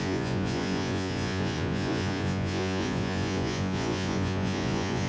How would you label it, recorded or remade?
remade